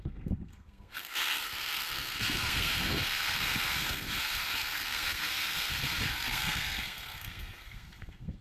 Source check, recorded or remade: remade